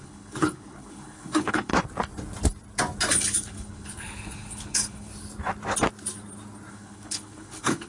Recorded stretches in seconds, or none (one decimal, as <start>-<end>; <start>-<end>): 1.7-3.1; 5.1-6.7